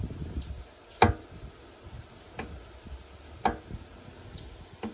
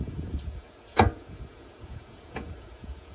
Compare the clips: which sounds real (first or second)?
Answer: first